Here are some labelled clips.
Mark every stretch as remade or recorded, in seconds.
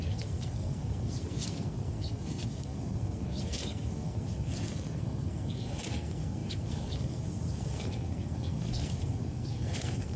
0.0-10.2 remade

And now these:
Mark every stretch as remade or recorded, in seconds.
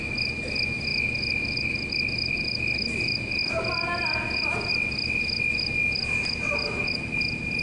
0.0-7.6 recorded